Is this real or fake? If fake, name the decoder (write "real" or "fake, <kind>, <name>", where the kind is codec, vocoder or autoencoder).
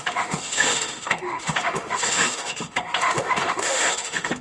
fake, autoencoder, DAC-VAE